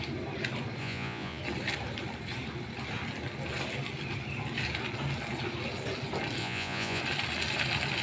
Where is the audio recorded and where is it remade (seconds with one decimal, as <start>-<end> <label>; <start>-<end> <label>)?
0.0-0.8 recorded; 0.8-1.4 remade; 1.4-6.4 recorded; 6.4-7.0 remade; 7.0-8.0 recorded